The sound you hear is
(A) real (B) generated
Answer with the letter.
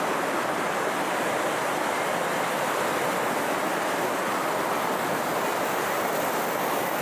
A